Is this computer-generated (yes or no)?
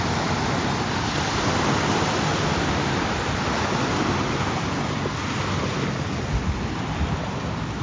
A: no